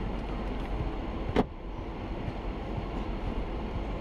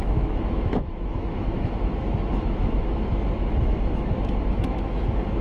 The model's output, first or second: second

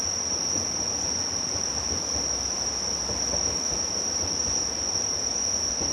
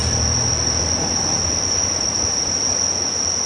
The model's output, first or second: first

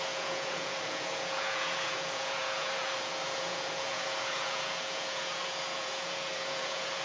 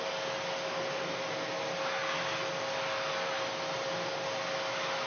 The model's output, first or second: first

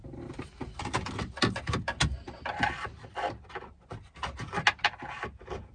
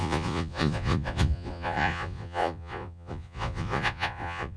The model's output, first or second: second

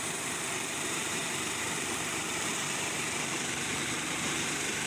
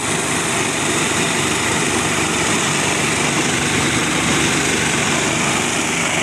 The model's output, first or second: first